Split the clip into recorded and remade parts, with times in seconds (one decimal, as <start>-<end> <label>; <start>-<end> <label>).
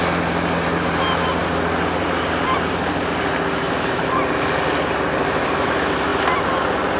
0.0-6.1 remade; 6.1-7.0 recorded